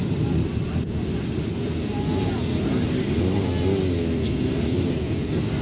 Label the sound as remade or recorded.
recorded